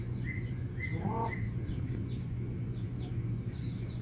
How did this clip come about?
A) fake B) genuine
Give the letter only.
A